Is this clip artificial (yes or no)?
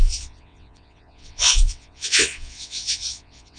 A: yes